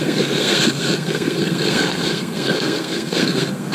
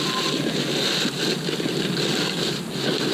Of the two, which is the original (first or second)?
second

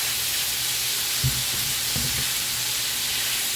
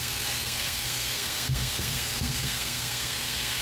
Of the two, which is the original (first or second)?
first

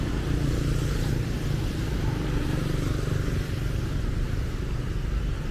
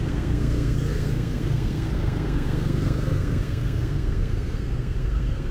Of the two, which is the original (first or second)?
first